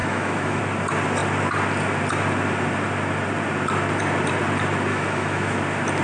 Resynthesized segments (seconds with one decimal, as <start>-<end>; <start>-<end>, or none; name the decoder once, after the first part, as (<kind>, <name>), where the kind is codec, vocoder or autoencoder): 0.0-0.6 (autoencoder, DAC-VAE); 4.9-5.6